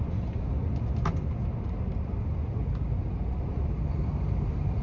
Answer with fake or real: real